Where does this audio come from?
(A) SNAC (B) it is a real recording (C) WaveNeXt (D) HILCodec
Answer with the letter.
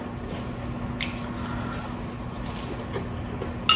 B